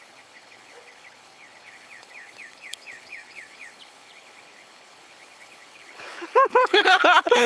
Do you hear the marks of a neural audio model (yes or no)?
yes